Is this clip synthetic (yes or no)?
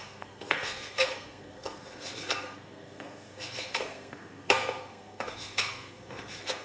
yes